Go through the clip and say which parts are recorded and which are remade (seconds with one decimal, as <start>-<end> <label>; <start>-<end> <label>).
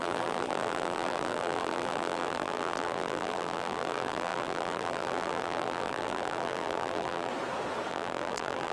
0.0-7.3 remade; 7.3-7.9 recorded; 7.9-8.7 remade